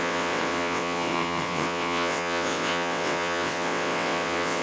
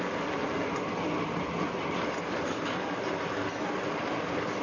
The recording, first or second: second